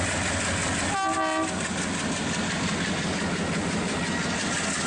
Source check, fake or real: real